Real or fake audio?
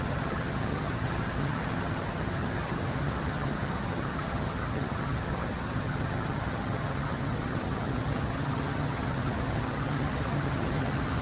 fake